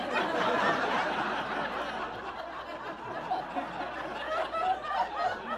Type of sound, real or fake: real